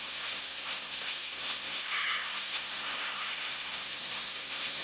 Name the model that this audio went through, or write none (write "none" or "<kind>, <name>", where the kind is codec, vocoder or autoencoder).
codec, SNAC